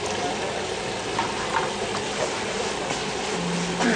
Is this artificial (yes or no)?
no